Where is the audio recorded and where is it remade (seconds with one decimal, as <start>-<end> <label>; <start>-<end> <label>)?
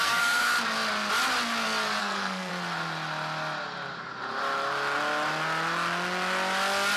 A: 0.0-0.5 remade; 0.5-2.0 recorded; 2.0-2.5 remade; 2.5-7.0 recorded